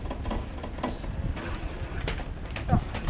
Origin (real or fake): real